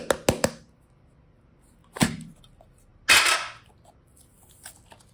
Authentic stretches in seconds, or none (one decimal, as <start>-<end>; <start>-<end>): 0.0-1.8; 2.4-5.1